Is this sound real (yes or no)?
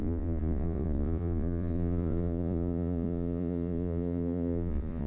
no